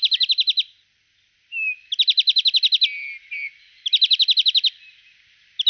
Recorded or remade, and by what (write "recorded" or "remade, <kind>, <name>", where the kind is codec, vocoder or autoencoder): recorded